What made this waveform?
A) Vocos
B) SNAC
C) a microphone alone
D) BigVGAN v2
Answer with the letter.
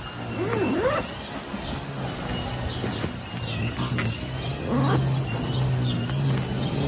C